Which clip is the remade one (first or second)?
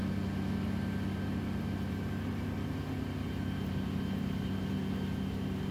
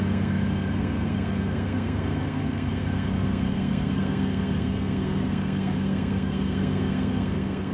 second